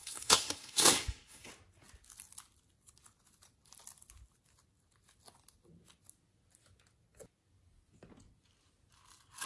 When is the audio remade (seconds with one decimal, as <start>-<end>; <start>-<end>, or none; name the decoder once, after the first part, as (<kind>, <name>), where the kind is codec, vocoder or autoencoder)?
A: 0.0-1.5 (codec, SNAC)